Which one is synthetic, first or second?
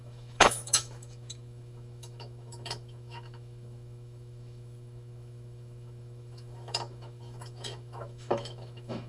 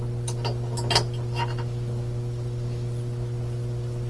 first